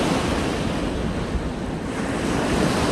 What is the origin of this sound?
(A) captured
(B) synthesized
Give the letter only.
A